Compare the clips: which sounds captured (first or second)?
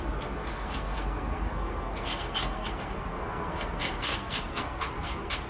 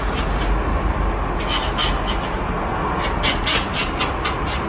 second